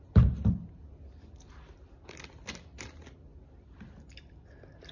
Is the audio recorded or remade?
recorded